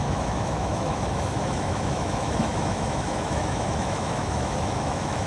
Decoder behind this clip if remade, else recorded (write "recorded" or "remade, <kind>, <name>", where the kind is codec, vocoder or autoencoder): remade, autoencoder, DAC-VAE